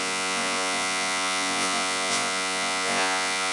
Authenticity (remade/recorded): remade